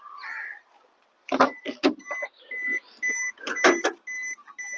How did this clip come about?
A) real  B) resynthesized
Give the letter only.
A